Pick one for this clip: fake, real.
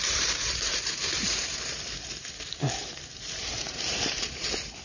fake